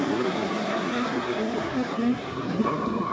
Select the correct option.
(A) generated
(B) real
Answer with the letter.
A